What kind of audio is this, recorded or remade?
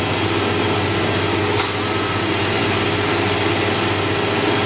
recorded